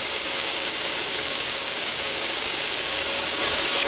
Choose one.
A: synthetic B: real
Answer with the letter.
A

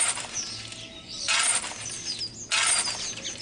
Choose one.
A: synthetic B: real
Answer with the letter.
B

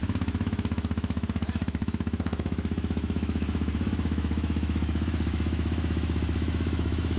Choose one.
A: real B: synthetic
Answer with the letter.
B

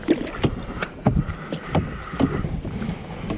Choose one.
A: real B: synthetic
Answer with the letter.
A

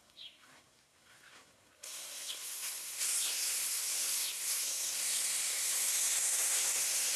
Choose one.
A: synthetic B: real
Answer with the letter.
A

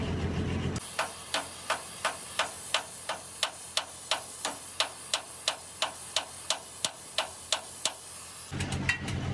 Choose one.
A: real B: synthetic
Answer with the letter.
A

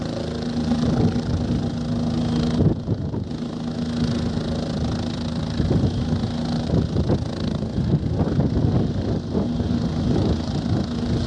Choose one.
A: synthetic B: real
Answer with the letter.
B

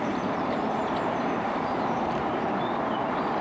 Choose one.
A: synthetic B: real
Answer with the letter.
A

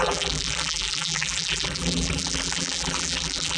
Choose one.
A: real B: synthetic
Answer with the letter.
B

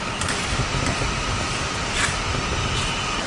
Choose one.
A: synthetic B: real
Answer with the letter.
B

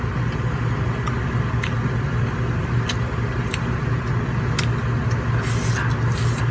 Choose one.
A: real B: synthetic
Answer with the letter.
A